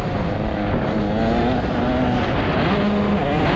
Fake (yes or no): no